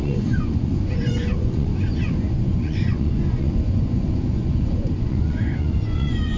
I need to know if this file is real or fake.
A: fake